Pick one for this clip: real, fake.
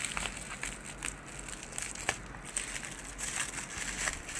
real